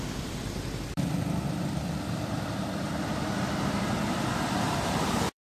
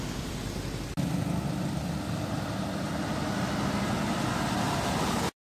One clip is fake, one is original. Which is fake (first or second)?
first